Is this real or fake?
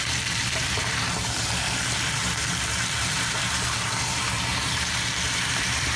fake